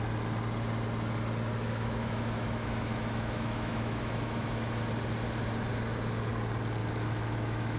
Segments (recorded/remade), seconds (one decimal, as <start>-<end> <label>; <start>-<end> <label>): 0.0-1.5 recorded; 1.5-4.9 remade; 4.9-6.8 recorded; 6.8-7.8 remade